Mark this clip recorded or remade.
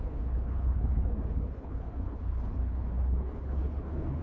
remade